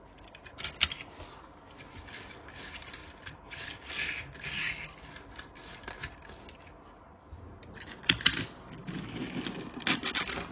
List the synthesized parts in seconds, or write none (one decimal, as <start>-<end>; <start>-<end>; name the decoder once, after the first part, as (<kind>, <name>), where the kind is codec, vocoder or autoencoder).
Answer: none